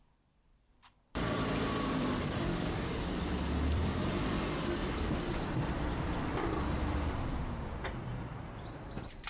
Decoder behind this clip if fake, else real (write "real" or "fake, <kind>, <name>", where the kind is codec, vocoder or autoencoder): fake, vocoder, BigVGAN v2